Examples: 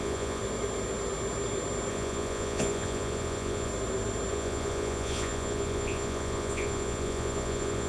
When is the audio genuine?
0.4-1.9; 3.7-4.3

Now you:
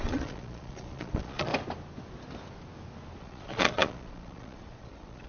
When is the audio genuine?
1.5-3.2

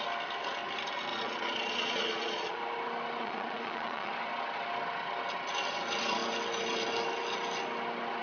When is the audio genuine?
0.0-1.1; 2.6-3.2; 4.1-8.2